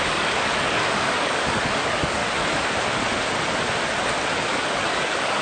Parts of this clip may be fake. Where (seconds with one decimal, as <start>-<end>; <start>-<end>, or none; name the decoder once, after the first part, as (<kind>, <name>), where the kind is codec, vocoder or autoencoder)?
0.0-2.2 (codec, DAC); 4.4-5.4